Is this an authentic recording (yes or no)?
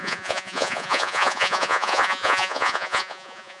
no